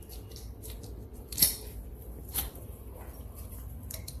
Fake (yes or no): yes